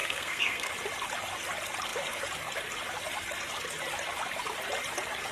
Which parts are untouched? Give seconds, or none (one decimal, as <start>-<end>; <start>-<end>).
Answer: 0.7-5.3